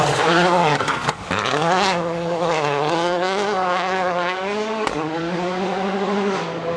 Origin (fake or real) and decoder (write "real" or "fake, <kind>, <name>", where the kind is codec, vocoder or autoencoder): fake, codec, DAC